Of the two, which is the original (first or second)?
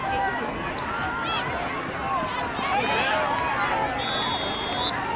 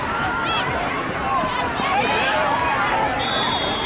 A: first